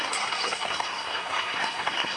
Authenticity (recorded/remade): remade